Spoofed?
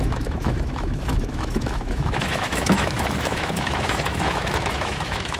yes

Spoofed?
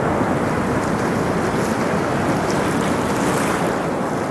no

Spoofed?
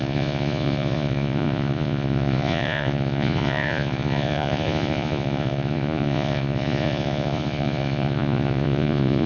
yes